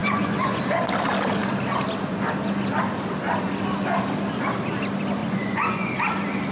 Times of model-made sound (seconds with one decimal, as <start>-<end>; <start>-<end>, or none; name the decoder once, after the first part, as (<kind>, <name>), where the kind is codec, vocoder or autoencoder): 0.0-0.6 (vocoder, Vocos); 5.2-5.9